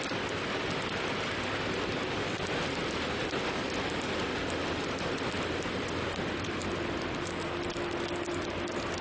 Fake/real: real